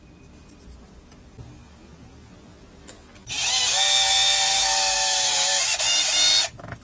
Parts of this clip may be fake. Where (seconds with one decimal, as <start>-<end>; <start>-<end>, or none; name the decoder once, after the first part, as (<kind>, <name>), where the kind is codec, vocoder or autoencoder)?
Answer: 4.5-5.6 (autoencoder, DAC-VAE)